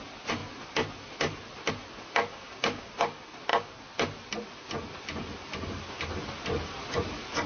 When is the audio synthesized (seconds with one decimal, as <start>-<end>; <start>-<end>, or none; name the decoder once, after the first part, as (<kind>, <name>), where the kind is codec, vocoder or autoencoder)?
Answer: 2.3-2.9 (codec, DAC)